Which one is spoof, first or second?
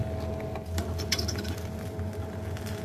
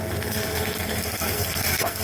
second